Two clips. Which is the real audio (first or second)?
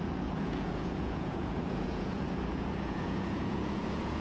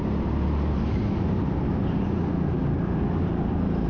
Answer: second